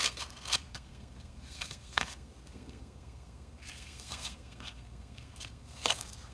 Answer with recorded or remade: remade